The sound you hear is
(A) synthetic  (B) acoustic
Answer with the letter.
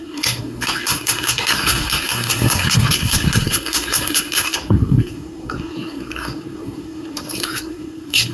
A